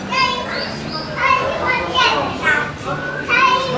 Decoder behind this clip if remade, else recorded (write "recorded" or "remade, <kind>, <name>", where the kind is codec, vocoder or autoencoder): recorded